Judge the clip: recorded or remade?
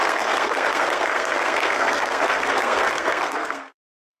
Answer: remade